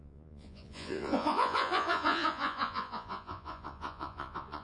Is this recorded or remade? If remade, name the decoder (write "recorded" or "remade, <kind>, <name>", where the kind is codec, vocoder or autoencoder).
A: remade, vocoder, Vocos